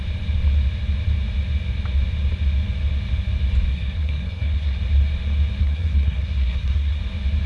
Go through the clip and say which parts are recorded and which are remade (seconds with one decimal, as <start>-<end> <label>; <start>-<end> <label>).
0.0-3.7 recorded; 3.7-4.8 remade; 4.8-5.6 recorded; 5.6-7.0 remade; 7.0-7.5 recorded